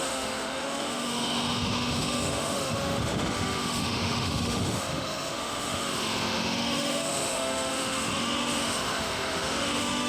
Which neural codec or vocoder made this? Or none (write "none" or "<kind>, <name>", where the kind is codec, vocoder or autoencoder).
autoencoder, DAC-VAE